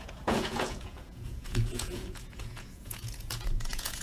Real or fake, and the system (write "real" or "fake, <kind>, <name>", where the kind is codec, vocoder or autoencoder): fake, vocoder, Vocos